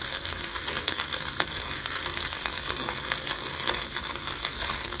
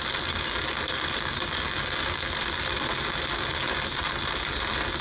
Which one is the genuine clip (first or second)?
second